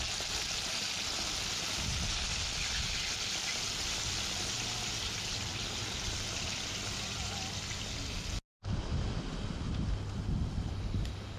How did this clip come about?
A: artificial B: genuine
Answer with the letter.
B